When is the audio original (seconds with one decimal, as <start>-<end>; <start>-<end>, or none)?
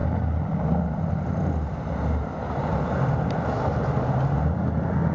0.0-5.1